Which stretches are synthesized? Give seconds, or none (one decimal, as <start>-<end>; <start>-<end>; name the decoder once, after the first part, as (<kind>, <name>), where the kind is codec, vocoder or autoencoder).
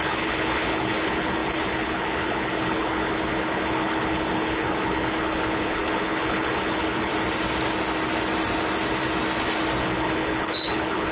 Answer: 0.0-7.1 (codec, HILCodec); 9.8-11.1